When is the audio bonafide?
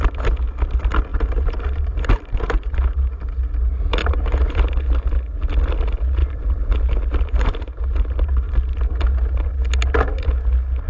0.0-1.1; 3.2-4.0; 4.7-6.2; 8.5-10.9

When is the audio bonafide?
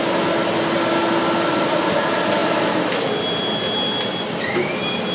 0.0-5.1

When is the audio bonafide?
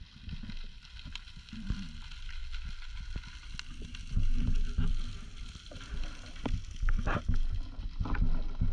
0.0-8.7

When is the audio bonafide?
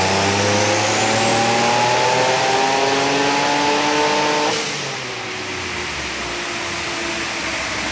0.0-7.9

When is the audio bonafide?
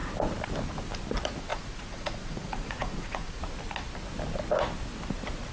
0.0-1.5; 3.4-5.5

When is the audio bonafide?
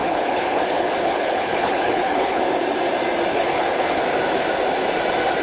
2.4-3.3; 4.0-5.4